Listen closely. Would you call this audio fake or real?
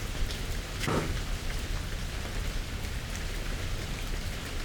real